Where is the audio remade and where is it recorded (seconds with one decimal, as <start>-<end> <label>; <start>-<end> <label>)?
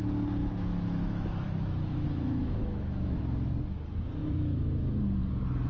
0.0-0.4 recorded; 0.4-3.2 remade; 3.2-4.2 recorded; 4.2-5.0 remade; 5.0-5.7 recorded